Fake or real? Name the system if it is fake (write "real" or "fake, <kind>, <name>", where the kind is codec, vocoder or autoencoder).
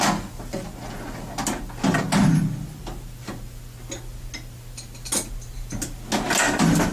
real